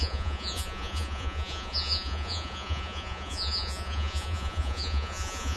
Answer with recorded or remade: remade